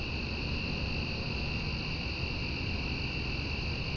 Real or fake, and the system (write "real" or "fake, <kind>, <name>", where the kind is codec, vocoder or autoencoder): real